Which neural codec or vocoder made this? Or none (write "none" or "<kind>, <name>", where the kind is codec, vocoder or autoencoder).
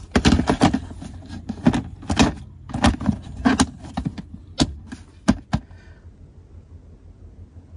none